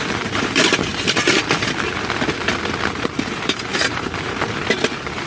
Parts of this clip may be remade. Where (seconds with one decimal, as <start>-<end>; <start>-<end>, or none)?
0.0-0.9; 3.2-5.3